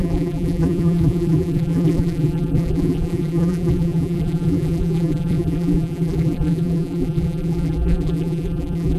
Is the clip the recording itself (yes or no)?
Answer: no